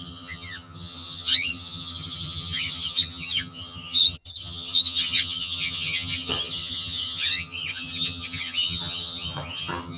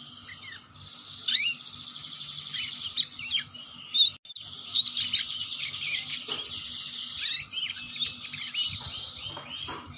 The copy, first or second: first